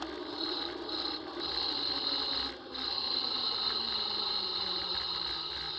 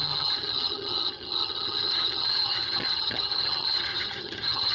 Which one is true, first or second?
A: first